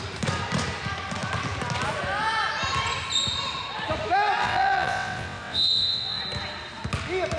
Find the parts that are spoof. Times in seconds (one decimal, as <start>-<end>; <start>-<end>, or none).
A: 4.4-6.2